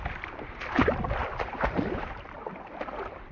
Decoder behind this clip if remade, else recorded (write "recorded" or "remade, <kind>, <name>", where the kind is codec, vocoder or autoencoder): recorded